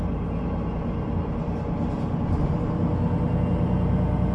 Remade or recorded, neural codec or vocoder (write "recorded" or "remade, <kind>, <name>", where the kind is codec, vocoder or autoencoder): recorded